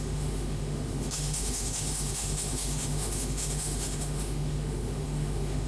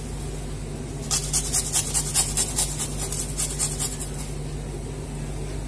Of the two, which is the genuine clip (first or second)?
second